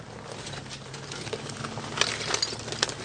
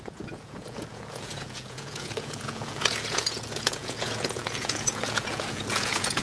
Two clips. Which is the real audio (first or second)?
first